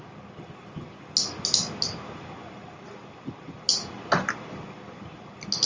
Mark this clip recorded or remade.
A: recorded